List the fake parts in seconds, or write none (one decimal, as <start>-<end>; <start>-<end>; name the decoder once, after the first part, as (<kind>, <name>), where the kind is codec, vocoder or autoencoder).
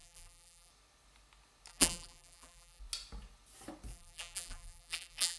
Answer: 0.0-0.7 (vocoder, BigVGAN v2); 1.7-2.8; 3.9-5.4